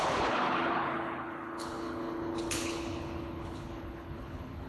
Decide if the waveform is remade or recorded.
remade